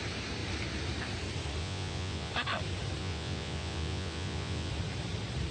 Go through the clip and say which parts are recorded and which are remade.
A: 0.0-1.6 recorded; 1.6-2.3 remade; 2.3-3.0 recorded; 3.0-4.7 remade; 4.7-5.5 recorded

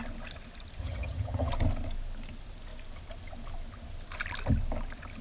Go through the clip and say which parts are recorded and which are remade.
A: 0.0-0.8 recorded; 0.8-1.5 remade; 1.5-5.2 recorded

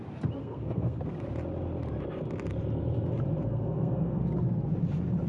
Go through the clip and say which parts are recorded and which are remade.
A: 0.0-0.4 recorded; 0.4-1.0 remade; 1.0-3.5 recorded; 3.5-4.2 remade; 4.2-5.3 recorded

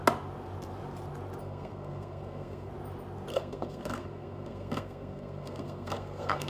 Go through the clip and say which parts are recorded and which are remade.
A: 0.0-1.4 recorded; 1.4-2.7 remade; 2.7-3.3 recorded; 3.3-6.5 remade

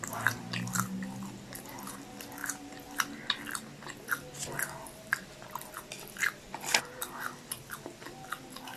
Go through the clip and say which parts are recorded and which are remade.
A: 0.0-8.8 recorded

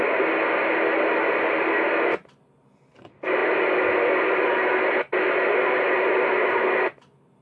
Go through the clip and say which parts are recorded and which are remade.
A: 0.0-7.4 recorded

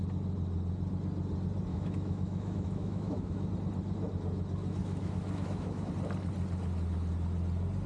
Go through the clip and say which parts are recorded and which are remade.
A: 0.0-1.7 recorded; 1.7-3.5 remade; 3.5-4.8 recorded; 4.8-5.9 remade; 5.9-7.9 recorded